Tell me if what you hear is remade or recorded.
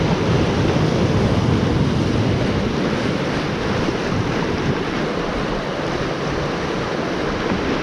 recorded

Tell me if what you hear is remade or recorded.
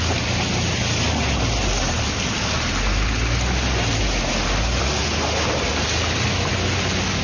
recorded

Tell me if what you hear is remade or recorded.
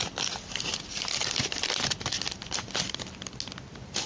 recorded